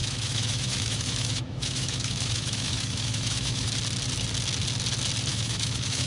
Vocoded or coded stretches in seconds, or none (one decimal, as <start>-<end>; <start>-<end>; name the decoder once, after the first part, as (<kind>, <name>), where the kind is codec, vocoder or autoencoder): 0.0-3.7 (autoencoder, DAC-VAE); 5.3-6.1